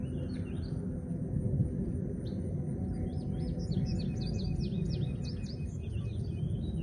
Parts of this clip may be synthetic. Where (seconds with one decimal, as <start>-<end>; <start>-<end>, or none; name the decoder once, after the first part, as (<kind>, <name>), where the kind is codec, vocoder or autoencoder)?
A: none